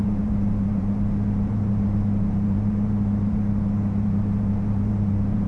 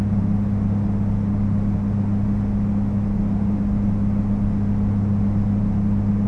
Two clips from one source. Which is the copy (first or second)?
first